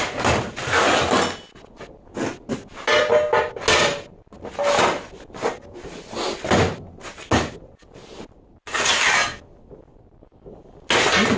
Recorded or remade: recorded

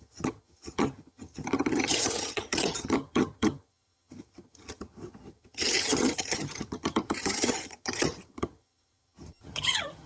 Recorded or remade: remade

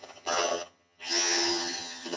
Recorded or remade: remade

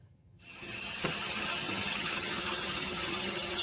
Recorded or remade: remade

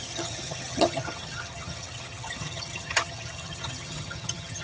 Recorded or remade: remade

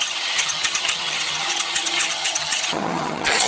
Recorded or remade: remade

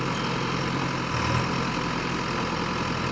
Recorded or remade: recorded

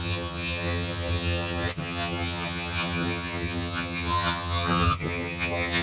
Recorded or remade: remade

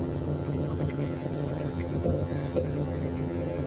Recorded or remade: remade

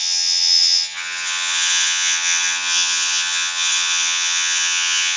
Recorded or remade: remade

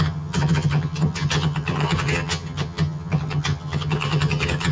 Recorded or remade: remade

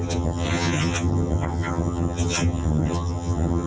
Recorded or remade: remade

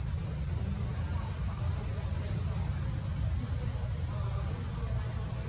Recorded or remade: recorded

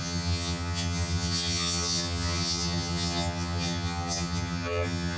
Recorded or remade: remade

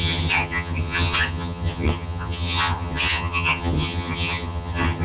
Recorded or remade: remade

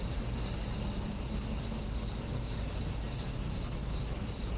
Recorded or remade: recorded